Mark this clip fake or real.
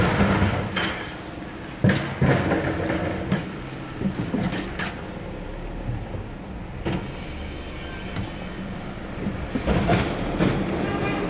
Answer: real